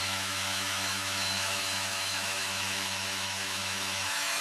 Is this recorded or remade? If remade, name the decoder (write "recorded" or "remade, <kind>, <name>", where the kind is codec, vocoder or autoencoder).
remade, autoencoder, DAC-VAE